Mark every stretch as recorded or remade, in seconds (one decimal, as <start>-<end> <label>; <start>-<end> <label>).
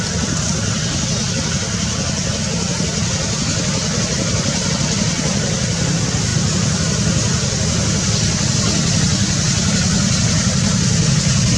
0.0-11.6 recorded